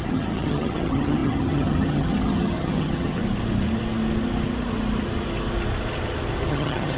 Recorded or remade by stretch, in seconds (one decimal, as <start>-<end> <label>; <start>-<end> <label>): 0.0-3.2 remade; 3.2-6.5 recorded; 6.5-7.0 remade